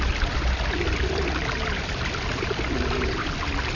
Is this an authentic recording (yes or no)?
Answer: yes